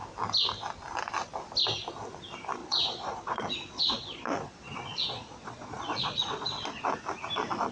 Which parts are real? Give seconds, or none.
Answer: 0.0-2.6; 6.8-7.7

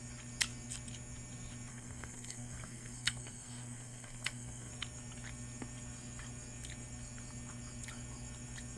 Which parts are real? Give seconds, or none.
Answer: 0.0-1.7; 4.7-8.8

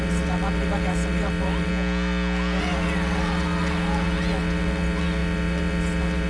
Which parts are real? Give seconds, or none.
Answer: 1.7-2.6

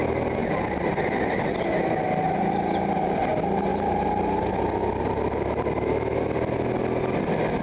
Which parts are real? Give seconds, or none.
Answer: 0.0-3.7; 4.5-7.6

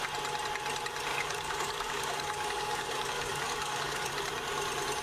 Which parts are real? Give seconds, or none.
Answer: 0.0-1.1; 4.1-5.0

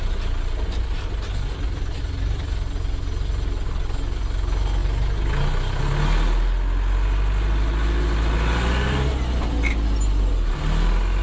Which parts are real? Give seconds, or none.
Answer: 0.0-11.2